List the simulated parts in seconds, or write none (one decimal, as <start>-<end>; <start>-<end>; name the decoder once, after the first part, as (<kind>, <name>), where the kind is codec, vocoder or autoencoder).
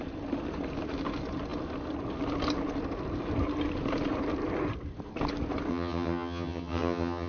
5.7-7.3 (vocoder, HiFi-GAN)